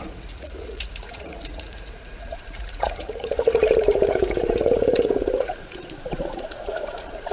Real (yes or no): no